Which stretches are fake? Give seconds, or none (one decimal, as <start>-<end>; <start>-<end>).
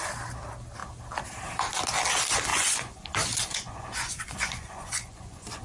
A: 2.5-5.6